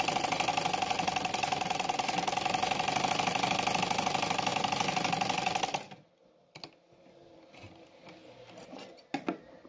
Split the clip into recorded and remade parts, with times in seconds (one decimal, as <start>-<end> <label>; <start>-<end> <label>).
0.0-9.7 recorded